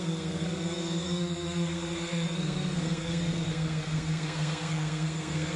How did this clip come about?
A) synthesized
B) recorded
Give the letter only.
A